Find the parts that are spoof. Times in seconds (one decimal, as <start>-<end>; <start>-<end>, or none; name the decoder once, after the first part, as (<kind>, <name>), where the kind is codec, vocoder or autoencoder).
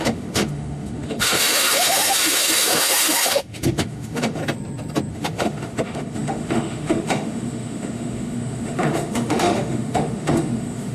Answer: 0.0-4.4 (autoencoder, DAC-VAE); 5.1-10.9